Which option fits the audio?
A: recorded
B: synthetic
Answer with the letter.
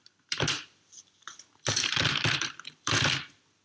B